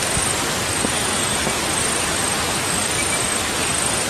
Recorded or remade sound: remade